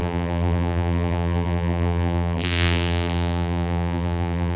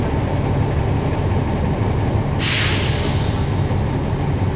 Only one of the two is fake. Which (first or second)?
first